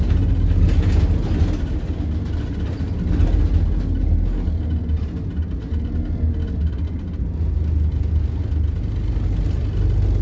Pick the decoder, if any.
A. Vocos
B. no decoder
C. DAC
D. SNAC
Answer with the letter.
B